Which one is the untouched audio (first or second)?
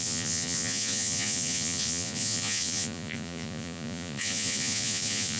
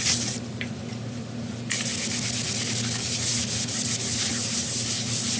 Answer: second